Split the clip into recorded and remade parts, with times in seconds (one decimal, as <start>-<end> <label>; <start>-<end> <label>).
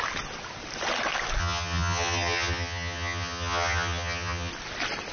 0.0-1.4 recorded; 1.4-4.5 remade; 4.5-5.1 recorded